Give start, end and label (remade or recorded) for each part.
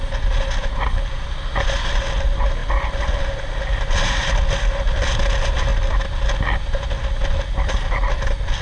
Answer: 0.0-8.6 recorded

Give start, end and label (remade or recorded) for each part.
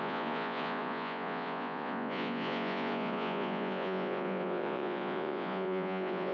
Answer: 0.0-6.3 remade